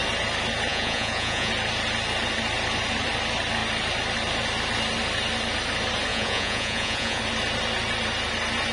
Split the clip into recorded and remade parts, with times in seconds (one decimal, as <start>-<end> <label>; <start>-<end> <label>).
0.0-0.7 recorded; 0.7-1.5 remade; 1.5-6.1 recorded; 6.1-7.2 remade; 7.2-8.7 recorded